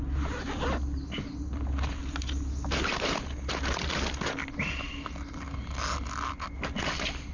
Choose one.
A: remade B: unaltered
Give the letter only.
B